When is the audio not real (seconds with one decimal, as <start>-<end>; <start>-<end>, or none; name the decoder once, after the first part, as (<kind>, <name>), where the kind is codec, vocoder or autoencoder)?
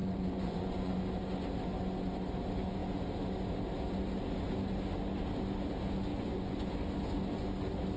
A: 0.0-0.9 (vocoder, Vocos); 6.1-6.7